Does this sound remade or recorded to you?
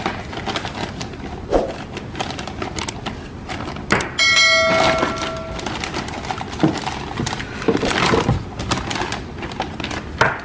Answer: recorded